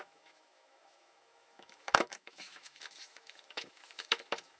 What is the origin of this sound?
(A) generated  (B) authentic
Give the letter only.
A